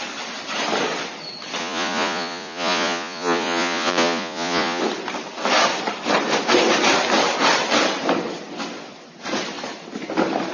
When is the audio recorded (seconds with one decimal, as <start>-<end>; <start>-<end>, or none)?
0.0-1.6; 4.8-10.5

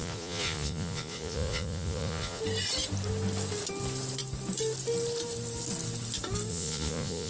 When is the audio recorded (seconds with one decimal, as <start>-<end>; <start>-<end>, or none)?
2.4-6.5